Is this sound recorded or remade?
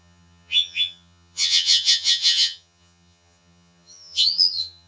remade